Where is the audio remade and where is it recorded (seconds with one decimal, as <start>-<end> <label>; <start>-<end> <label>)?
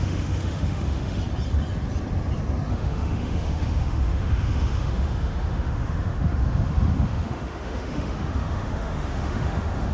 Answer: 0.0-1.2 remade; 1.2-2.7 recorded; 2.7-9.9 remade